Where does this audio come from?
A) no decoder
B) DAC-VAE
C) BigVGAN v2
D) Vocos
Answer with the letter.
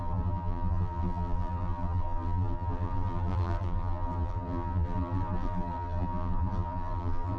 C